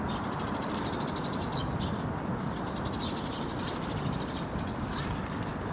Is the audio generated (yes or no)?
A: no